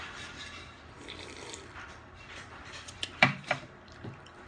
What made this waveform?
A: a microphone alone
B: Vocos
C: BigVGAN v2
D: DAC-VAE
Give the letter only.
C